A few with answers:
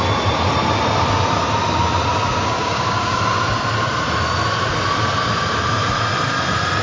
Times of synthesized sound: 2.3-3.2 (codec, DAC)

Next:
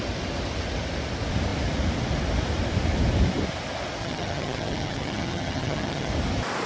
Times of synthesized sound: 4.0-6.1 (vocoder, HiFi-GAN)

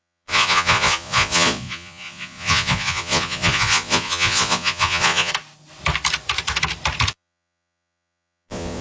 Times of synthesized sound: 0.0-5.3 (vocoder, Vocos); 7.1-8.8

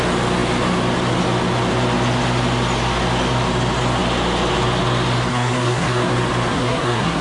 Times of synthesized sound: 5.3-6.1 (codec, SNAC); 6.5-7.2

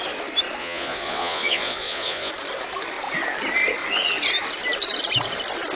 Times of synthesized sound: 0.6-2.3 (vocoder, Vocos)

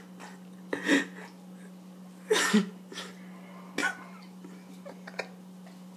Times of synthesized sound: none

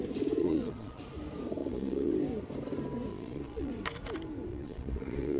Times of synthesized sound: 0.4-1.0 (vocoder, Vocos); 1.6-2.1; 3.1-3.7; 4.5-5.4

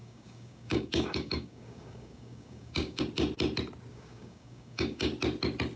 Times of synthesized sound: 0.0-3.0 (codec, DAC); 3.9-5.1